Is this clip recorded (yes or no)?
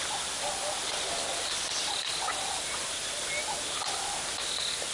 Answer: yes